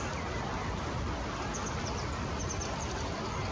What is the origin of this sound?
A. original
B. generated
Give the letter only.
A